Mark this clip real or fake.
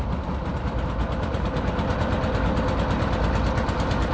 real